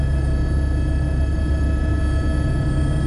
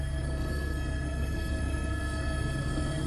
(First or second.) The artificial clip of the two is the second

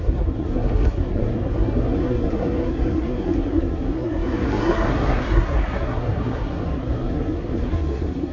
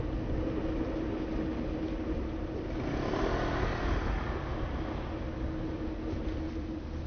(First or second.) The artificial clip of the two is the first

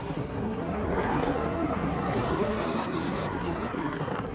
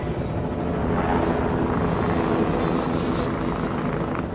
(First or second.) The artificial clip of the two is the first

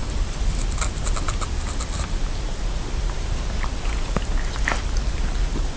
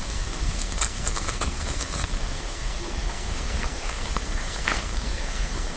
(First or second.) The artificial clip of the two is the second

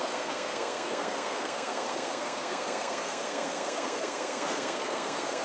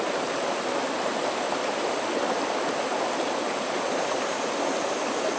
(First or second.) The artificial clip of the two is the first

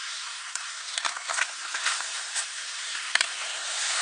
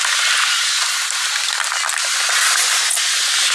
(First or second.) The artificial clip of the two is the first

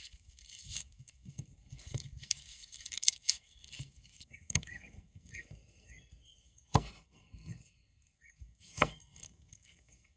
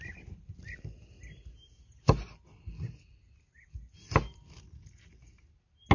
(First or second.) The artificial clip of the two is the first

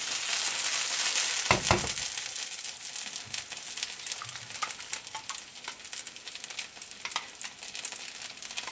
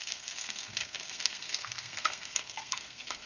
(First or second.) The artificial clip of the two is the second